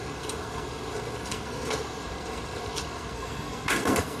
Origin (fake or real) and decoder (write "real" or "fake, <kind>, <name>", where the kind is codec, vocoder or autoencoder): fake, codec, SNAC